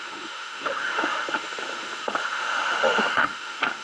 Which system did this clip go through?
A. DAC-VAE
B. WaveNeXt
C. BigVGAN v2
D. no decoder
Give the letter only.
A